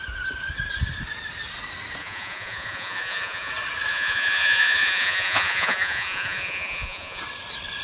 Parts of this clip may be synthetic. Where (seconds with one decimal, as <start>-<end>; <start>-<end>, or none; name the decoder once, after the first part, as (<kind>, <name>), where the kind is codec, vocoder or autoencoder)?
2.0-3.5 (vocoder, Vocos); 3.9-7.2